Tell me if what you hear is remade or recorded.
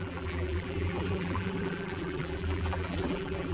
remade